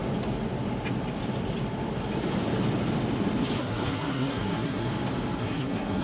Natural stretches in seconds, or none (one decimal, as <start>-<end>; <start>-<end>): 0.0-3.6; 4.9-5.4